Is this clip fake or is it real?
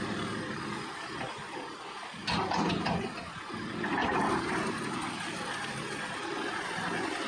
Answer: real